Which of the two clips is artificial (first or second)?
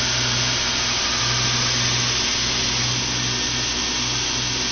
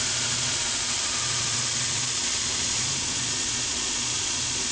second